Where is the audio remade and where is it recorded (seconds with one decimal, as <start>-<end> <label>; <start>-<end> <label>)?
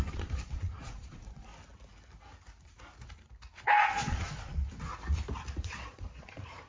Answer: 0.0-1.5 remade; 1.5-3.9 recorded; 3.9-4.5 remade; 4.5-5.6 recorded; 5.6-6.7 remade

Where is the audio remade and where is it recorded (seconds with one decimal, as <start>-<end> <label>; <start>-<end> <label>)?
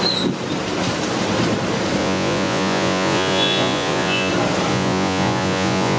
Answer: 0.0-2.0 recorded; 2.0-4.3 remade; 4.3-4.7 recorded; 4.7-6.0 remade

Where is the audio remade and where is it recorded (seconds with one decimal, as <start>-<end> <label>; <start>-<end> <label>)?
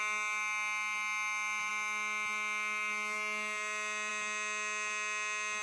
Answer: 0.0-5.6 recorded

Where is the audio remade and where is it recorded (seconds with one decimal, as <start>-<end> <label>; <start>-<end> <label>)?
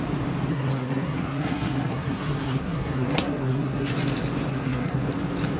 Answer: 0.0-0.5 recorded; 0.5-3.9 remade; 3.9-4.5 recorded; 4.5-5.0 remade; 5.0-5.6 recorded